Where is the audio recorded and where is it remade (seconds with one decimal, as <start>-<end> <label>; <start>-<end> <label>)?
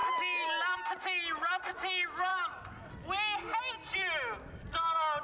0.0-5.2 recorded